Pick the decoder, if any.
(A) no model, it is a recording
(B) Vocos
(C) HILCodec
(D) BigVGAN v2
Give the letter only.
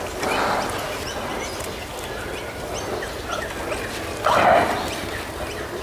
A